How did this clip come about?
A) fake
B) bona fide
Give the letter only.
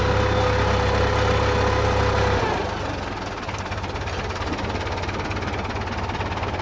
B